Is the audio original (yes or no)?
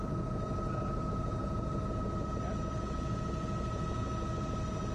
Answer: yes